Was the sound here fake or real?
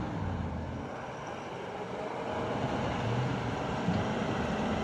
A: real